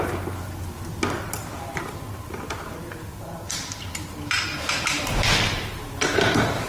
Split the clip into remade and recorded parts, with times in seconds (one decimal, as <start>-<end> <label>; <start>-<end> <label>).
0.0-1.4 recorded; 1.4-3.8 remade; 3.8-4.5 recorded; 4.5-6.7 remade